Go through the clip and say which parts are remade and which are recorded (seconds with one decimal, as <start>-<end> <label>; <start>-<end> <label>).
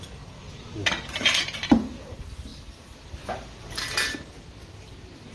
0.0-2.5 recorded; 2.5-3.7 remade; 3.7-5.3 recorded